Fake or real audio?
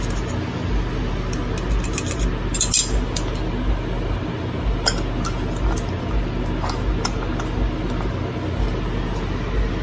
real